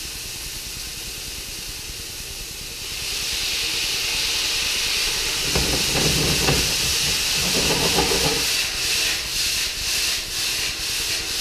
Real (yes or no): yes